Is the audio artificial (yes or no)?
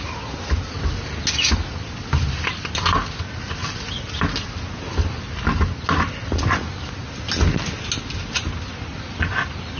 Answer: no